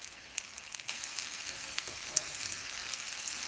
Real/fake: fake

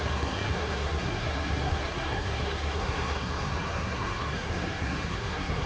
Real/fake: fake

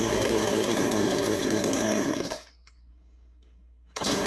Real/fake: fake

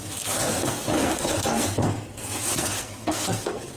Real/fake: fake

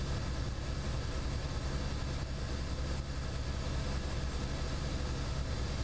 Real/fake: real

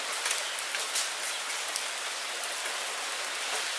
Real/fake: real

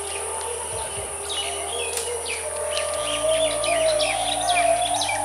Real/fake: real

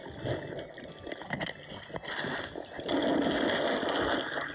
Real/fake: real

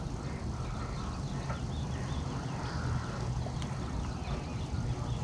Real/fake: real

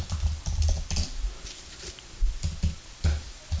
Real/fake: real